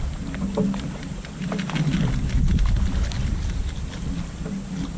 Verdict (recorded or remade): recorded